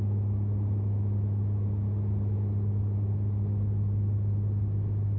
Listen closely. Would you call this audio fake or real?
real